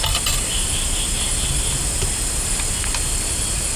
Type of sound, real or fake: real